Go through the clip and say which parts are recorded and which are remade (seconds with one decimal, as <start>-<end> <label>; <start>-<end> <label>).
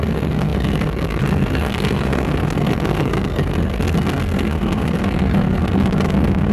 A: 0.0-6.5 remade